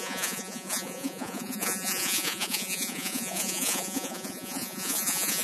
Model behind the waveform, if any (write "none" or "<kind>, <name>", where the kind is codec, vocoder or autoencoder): vocoder, Vocos